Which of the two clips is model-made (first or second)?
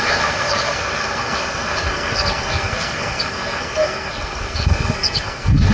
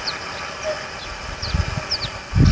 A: first